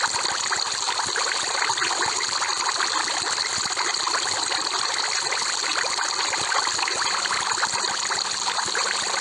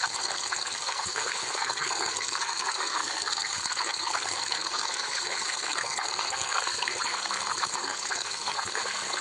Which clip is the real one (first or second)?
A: first